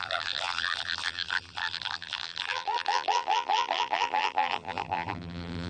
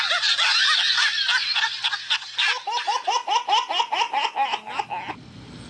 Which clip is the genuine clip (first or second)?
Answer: second